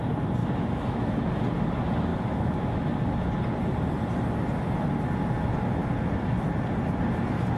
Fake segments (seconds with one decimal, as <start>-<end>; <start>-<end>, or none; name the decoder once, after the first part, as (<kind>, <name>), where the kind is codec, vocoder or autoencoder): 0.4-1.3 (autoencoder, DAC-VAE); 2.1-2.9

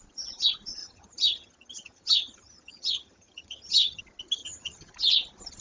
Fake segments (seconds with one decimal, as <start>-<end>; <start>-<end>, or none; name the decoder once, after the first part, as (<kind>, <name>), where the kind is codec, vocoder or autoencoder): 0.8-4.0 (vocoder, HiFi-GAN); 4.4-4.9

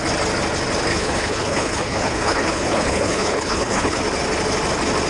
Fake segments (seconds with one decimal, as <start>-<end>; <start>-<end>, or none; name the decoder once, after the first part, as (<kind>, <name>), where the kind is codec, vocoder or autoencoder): 0.9-4.0 (codec, HILCodec)

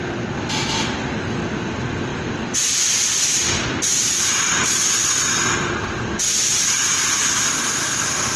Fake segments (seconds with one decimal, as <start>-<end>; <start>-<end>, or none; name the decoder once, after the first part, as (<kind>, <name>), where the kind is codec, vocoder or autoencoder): none

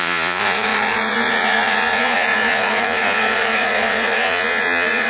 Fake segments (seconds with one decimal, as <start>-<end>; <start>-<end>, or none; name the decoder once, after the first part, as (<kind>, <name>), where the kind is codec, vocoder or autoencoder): 0.0-5.1 (vocoder, Vocos)

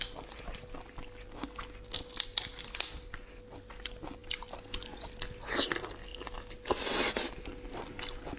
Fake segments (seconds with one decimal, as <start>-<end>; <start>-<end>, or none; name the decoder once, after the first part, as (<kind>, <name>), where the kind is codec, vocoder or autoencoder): none

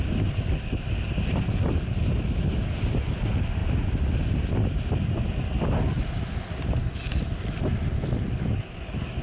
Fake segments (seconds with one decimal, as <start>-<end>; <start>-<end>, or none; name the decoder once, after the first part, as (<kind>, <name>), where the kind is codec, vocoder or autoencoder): none

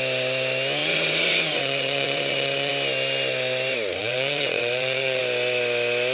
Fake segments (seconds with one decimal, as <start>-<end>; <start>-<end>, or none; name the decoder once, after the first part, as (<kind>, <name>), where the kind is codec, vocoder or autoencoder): 0.8-2.7 (vocoder, WaveNeXt); 4.0-5.2